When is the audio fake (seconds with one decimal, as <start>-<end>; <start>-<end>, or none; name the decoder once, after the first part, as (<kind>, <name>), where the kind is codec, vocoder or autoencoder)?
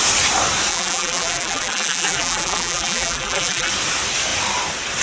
0.7-3.7 (vocoder, BigVGAN v2)